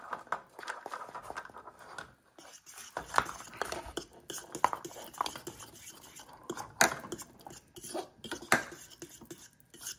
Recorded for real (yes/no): yes